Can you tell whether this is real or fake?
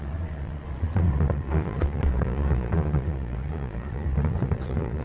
fake